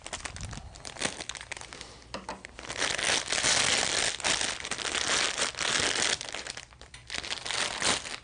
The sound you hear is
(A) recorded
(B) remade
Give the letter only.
A